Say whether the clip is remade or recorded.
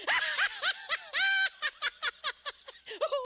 recorded